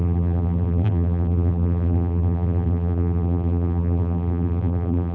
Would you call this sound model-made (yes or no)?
yes